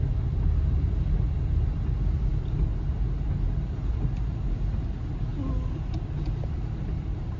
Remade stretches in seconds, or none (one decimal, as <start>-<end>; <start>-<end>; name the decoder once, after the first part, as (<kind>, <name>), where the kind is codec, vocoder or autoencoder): none